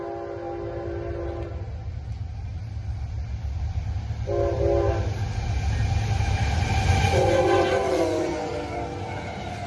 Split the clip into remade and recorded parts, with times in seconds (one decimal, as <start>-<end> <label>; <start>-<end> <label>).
0.0-6.9 recorded; 6.9-8.5 remade; 8.5-9.7 recorded